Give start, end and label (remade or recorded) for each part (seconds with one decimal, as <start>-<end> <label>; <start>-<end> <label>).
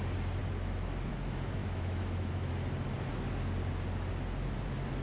0.0-1.6 recorded; 1.6-2.5 remade; 2.5-5.0 recorded